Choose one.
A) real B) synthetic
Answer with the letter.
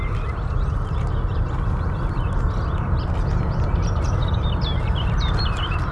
A